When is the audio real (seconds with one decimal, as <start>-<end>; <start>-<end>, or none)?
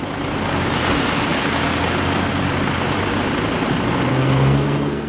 0.0-4.1